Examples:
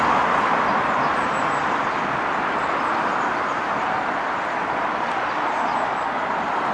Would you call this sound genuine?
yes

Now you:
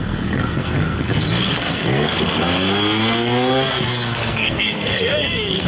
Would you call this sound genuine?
no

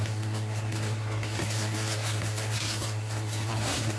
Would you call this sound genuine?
no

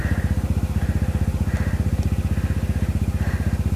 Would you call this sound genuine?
yes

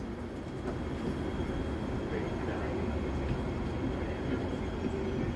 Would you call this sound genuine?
yes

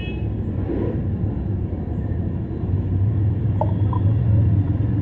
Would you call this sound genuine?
no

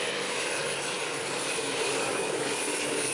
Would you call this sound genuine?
no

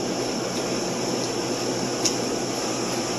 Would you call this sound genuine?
yes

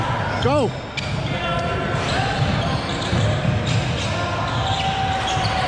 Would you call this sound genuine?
yes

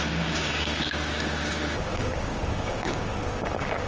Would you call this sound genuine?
no